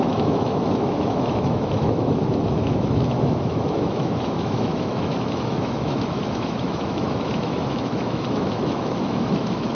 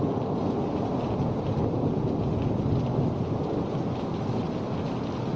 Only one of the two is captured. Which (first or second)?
second